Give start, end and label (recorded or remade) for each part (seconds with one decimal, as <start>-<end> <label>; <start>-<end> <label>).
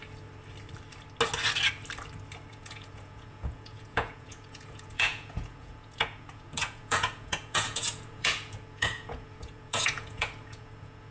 0.0-2.5 recorded; 2.5-11.1 remade